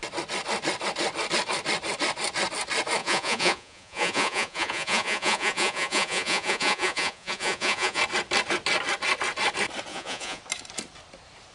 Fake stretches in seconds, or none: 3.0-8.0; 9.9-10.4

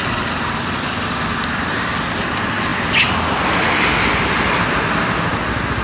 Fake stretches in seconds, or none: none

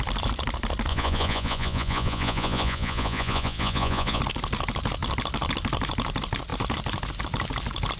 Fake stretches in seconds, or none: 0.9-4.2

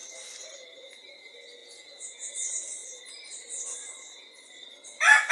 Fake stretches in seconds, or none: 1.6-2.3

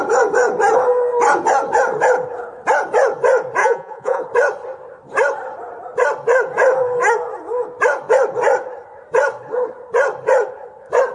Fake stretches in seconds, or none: 3.6-4.2

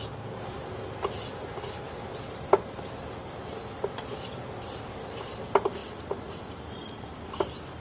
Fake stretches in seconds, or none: none

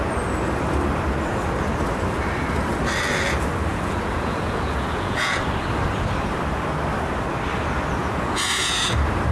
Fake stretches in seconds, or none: 3.7-5.4; 8.0-8.9